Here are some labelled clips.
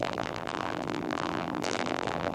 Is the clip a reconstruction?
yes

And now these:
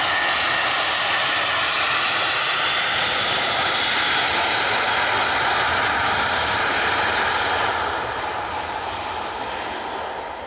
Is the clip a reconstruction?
no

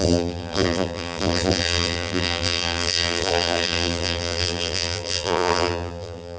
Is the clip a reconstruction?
yes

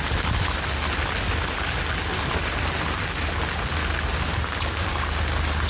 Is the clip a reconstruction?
no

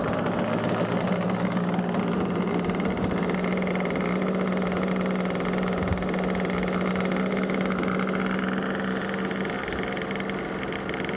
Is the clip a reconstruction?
no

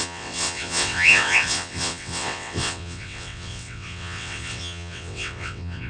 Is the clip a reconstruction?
yes